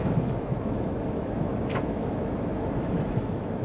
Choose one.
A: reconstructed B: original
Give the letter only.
A